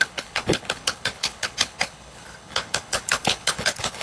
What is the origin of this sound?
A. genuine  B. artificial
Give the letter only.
B